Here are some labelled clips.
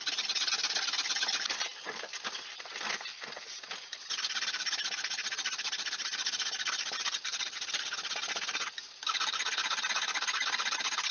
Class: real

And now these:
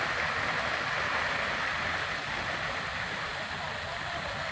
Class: real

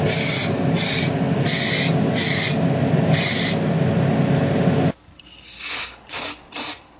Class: real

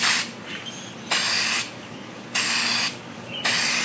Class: real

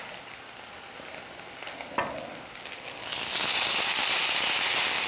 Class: real